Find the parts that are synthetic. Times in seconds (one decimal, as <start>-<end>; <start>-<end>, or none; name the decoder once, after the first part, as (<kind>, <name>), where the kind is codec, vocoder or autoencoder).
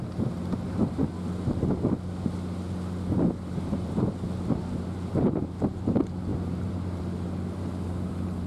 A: 0.0-1.0 (vocoder, BigVGAN v2); 3.5-8.5